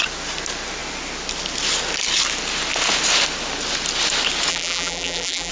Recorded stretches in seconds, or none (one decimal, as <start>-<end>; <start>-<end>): 0.0-4.5